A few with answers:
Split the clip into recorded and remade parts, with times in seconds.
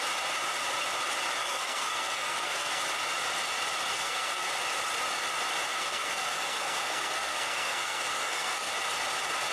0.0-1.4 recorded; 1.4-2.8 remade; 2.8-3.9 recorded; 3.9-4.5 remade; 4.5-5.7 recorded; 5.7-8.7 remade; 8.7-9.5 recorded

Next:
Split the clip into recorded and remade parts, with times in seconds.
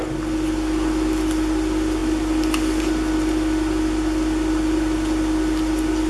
0.0-6.1 recorded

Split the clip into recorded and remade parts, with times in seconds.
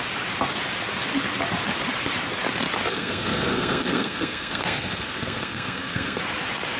0.0-2.9 recorded; 2.9-6.2 remade; 6.2-6.8 recorded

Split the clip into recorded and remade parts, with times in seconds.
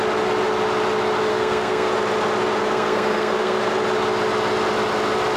0.0-1.3 recorded; 1.3-1.9 remade; 1.9-2.6 recorded; 2.6-3.7 remade; 3.7-5.4 recorded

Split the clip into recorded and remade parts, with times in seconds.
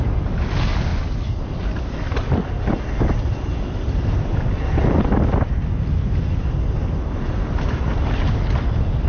0.0-9.1 recorded